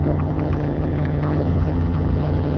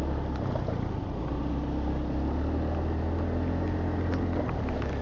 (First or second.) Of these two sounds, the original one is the second